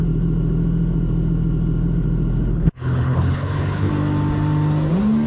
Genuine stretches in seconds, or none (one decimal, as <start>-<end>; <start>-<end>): 0.0-2.5; 3.9-5.3